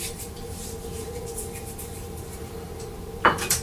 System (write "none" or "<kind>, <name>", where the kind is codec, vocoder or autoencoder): vocoder, BigVGAN v2